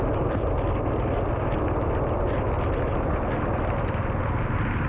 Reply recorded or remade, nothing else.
recorded